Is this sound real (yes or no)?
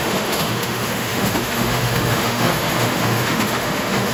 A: no